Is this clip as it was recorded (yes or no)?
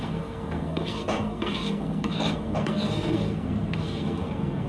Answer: no